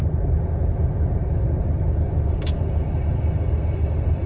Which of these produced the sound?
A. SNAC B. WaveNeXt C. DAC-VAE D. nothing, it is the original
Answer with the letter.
D